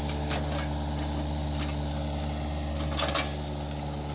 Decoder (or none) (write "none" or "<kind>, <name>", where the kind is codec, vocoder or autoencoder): none